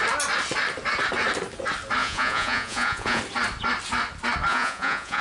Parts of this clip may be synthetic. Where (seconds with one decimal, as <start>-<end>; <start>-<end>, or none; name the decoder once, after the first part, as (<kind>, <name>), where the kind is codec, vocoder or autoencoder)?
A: 2.0-3.2 (vocoder, Vocos); 4.5-5.2